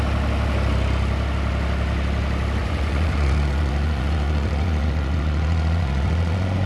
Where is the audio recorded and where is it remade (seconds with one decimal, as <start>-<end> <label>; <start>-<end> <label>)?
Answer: 0.0-2.6 recorded; 2.6-6.7 remade